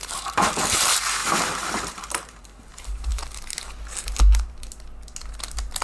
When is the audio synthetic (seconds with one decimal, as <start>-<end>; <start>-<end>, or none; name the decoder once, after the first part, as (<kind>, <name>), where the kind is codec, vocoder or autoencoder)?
0.0-3.1 (vocoder, BigVGAN v2)